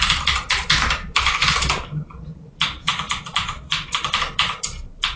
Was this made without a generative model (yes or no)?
no